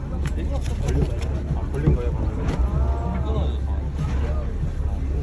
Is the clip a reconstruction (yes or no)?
no